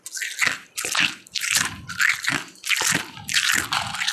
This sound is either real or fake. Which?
real